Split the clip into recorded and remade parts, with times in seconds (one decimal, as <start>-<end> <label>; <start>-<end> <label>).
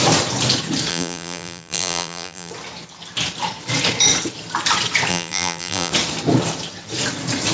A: 0.0-0.9 recorded; 0.9-2.5 remade; 2.5-5.1 recorded; 5.1-5.9 remade; 5.9-7.5 recorded